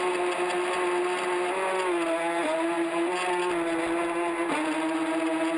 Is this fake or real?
real